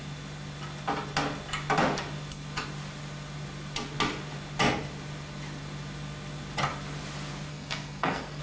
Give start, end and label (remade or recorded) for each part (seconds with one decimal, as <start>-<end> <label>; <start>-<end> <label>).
0.0-7.5 recorded; 7.5-8.4 remade